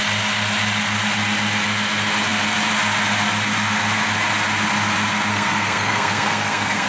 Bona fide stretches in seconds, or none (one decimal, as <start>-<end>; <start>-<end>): 0.0-5.3